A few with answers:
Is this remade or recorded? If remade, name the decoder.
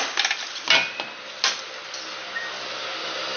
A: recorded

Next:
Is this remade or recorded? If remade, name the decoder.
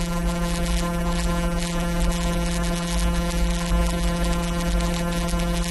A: remade, vocoder, BigVGAN v2